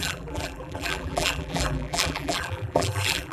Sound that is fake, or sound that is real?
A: fake